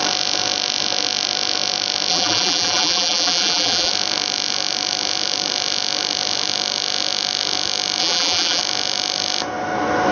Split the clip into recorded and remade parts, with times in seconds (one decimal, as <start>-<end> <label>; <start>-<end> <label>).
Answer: 0.0-2.1 recorded; 2.1-3.9 remade; 3.9-8.0 recorded; 8.0-8.6 remade; 8.6-10.1 recorded